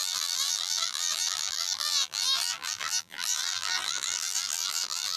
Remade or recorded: remade